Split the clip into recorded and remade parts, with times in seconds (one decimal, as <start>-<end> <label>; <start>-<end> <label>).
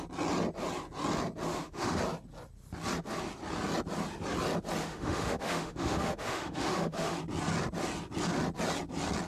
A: 0.0-1.5 recorded; 1.5-2.0 remade; 2.0-4.8 recorded; 4.8-7.2 remade; 7.2-9.3 recorded